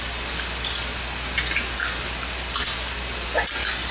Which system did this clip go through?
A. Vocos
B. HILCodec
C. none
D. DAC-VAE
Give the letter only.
C